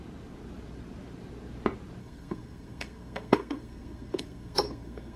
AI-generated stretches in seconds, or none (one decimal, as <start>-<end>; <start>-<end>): 2.0-5.2